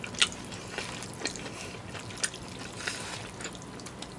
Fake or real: real